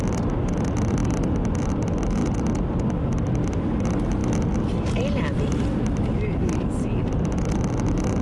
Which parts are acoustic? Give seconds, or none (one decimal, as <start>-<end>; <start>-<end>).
1.0-1.7; 4.2-5.2